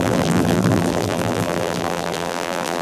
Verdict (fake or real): fake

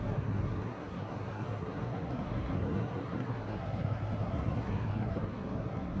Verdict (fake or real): fake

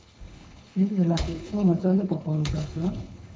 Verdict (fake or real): fake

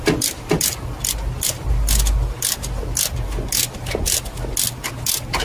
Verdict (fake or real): real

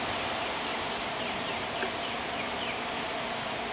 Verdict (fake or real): real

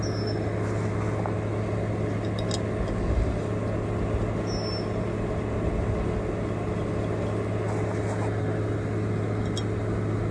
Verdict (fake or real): real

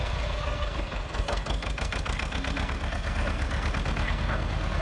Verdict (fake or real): fake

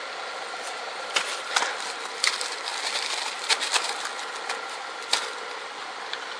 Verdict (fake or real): real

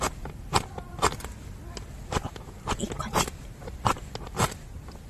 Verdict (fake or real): real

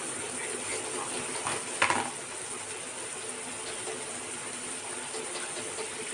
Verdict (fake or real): real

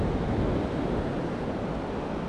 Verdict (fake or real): real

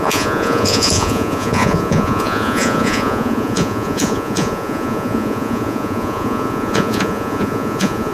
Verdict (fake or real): fake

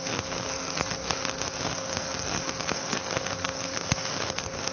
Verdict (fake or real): fake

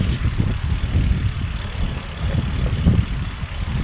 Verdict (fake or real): real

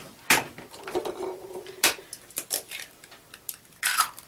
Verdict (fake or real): fake